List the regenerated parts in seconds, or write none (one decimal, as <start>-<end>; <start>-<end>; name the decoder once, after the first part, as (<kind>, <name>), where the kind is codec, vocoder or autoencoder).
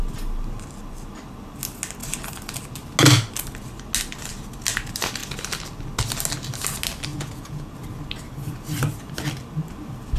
7.1-7.7 (vocoder, Vocos)